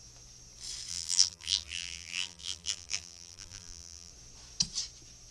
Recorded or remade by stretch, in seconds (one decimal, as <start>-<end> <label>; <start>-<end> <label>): 0.0-0.9 recorded; 0.9-4.1 remade; 4.1-5.3 recorded